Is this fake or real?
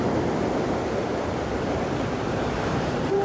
fake